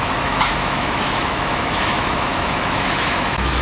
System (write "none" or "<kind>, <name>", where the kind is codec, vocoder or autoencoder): autoencoder, DAC-VAE